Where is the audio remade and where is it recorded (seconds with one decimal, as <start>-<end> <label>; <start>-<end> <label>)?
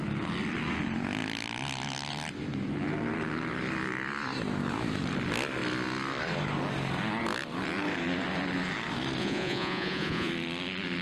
0.0-9.2 recorded; 9.2-10.3 remade; 10.3-11.0 recorded